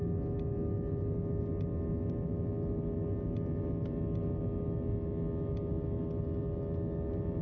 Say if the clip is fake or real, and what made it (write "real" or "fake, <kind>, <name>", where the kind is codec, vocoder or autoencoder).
real